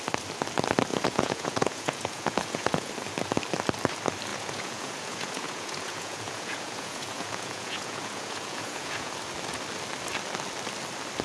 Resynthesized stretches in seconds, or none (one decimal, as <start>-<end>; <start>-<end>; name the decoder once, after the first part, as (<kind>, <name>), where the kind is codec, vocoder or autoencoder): 0.9-2.9 (vocoder, Vocos); 4.3-9.1